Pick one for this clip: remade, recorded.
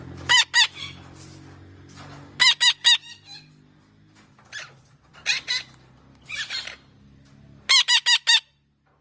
recorded